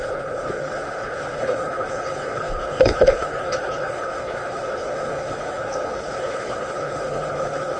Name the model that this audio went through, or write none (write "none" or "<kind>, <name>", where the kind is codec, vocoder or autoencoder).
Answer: codec, HILCodec